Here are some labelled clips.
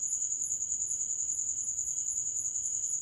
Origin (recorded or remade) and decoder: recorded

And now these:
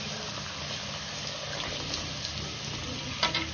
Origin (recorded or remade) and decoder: recorded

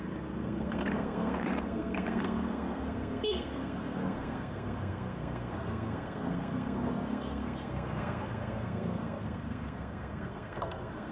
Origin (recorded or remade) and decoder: remade, codec, SNAC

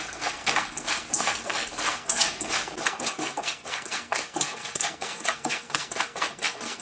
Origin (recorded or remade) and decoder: remade, codec, SNAC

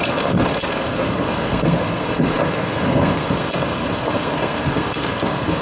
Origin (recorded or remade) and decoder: remade, codec, SNAC